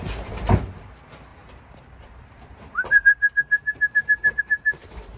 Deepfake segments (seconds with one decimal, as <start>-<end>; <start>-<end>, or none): 1.3-4.4